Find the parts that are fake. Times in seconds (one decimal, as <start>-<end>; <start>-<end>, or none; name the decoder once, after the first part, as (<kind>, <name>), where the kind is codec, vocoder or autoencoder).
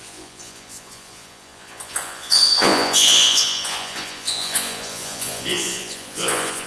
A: 0.0-6.7 (vocoder, Vocos)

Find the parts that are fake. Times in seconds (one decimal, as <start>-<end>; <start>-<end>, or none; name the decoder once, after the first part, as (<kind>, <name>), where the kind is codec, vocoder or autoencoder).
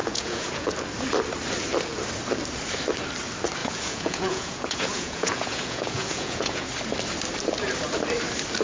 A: 0.0-0.7 (vocoder, Vocos); 3.6-6.7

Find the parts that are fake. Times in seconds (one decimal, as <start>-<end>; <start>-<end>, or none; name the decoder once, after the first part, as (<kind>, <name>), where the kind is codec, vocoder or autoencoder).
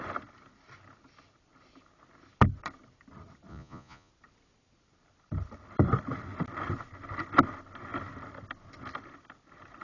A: 3.5-4.1 (vocoder, Vocos)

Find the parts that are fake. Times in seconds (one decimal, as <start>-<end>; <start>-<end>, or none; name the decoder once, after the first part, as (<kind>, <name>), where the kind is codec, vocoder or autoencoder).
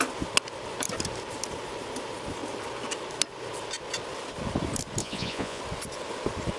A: 5.0-5.6 (vocoder, Vocos)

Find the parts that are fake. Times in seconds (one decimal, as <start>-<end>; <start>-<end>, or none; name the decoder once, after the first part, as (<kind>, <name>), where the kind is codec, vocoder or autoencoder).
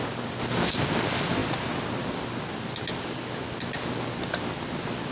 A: none